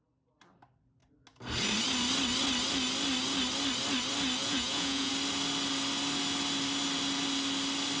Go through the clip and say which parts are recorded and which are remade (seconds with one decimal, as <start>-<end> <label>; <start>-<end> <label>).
0.0-4.4 recorded; 4.4-5.1 remade; 5.1-8.0 recorded